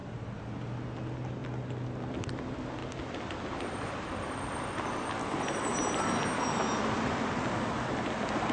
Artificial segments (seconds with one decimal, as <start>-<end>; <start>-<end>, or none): 0.0-0.7